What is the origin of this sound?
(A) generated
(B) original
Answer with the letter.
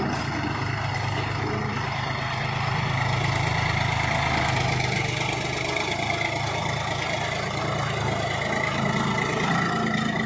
B